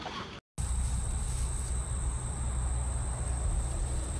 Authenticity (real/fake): real